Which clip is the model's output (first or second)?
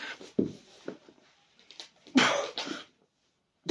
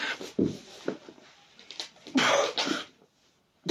first